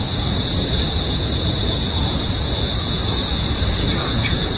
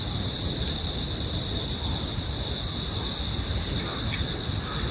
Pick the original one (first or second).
second